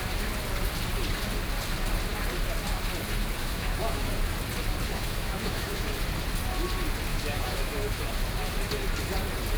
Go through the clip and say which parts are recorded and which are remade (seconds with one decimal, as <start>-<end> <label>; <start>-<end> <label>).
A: 0.0-3.4 recorded; 3.4-4.1 remade; 4.1-4.9 recorded; 4.9-5.9 remade; 5.9-7.1 recorded; 7.1-8.1 remade; 8.1-9.6 recorded